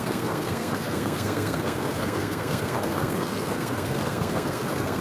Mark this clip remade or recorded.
remade